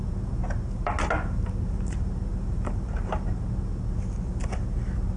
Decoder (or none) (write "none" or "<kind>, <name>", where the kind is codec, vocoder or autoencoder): none